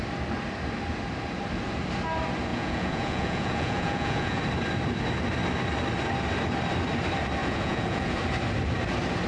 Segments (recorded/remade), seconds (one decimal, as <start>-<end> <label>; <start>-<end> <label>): 0.0-2.5 recorded; 2.5-4.4 remade; 4.4-7.4 recorded; 7.4-8.2 remade; 8.2-9.3 recorded